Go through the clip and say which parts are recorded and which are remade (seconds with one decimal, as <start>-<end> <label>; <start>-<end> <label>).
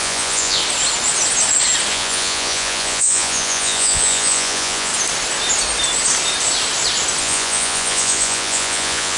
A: 0.0-0.6 remade; 0.6-1.9 recorded; 1.9-4.9 remade; 4.9-7.2 recorded; 7.2-9.2 remade